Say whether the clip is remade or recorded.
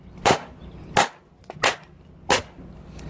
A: recorded